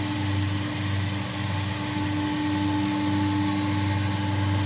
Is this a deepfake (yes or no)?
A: no